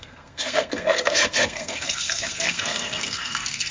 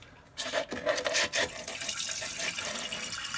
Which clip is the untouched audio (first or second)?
second